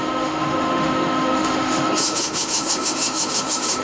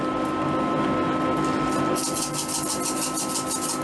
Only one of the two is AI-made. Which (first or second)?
first